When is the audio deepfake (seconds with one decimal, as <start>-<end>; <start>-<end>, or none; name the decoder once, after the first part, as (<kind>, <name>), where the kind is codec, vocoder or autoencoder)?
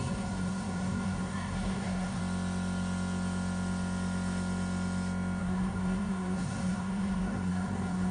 0.0-2.2 (codec, SNAC); 5.4-8.1